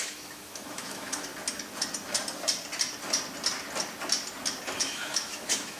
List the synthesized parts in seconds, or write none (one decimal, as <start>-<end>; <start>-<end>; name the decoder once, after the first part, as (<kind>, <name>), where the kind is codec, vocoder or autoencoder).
0.0-1.3 (autoencoder, DAC-VAE); 4.8-5.8

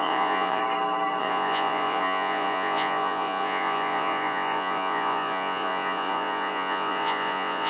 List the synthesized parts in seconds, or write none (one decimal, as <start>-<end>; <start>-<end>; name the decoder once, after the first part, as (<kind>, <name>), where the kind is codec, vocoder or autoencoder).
0.0-0.6 (vocoder, Vocos); 1.2-7.7